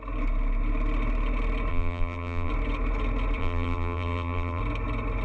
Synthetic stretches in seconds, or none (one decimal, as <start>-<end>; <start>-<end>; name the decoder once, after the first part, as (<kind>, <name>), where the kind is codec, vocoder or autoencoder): 1.7-2.5 (vocoder, BigVGAN v2); 3.4-4.6